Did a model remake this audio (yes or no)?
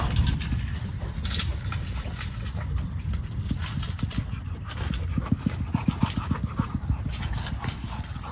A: no